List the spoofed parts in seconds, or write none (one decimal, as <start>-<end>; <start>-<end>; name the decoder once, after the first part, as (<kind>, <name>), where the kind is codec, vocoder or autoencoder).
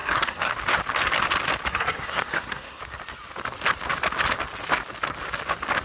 0.0-0.5 (codec, SNAC); 1.7-2.8